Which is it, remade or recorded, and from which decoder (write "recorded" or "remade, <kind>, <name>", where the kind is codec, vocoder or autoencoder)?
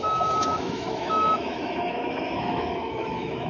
remade, autoencoder, DAC-VAE